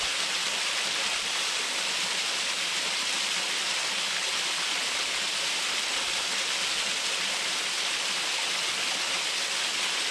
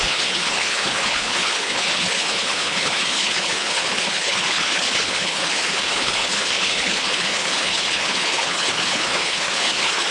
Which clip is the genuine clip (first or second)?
first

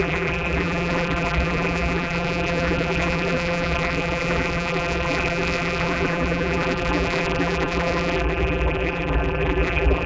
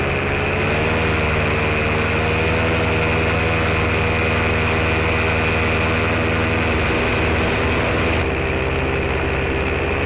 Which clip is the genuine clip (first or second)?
second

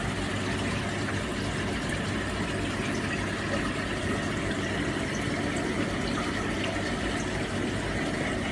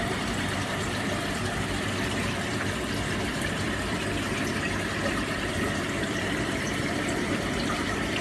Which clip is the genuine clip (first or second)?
first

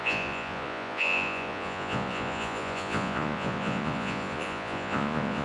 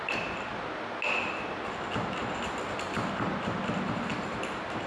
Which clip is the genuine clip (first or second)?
second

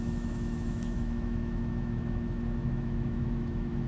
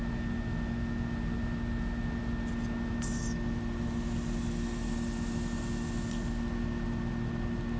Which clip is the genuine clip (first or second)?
second